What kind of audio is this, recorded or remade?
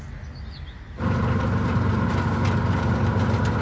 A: recorded